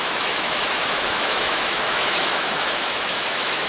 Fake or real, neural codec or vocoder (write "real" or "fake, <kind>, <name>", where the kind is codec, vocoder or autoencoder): fake, autoencoder, DAC-VAE